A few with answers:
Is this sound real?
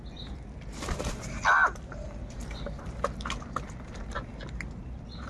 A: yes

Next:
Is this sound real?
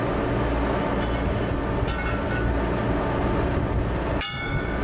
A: yes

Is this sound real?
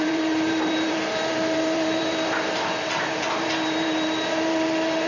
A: no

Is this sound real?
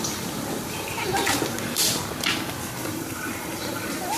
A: no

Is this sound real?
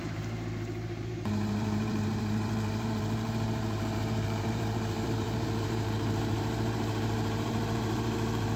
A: no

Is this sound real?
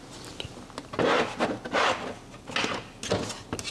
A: yes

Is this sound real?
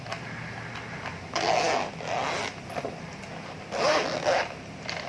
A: yes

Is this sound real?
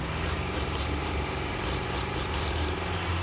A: no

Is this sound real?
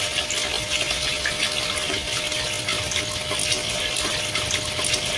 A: yes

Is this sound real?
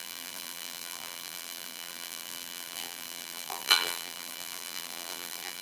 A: no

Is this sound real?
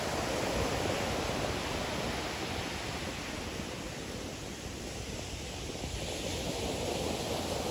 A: yes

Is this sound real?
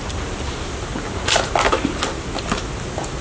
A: yes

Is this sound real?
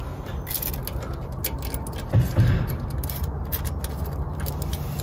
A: yes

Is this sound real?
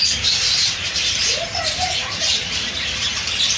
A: no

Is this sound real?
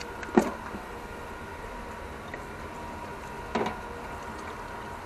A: yes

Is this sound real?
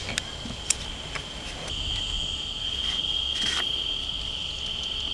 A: yes